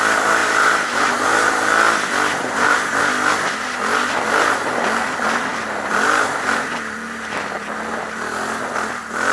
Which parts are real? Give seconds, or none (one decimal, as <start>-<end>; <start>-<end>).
0.0-0.4; 1.4-2.3; 3.0-9.3